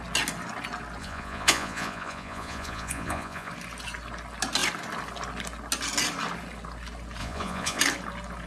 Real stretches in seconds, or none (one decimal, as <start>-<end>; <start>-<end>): 0.0-1.0; 3.5-7.2; 7.8-8.5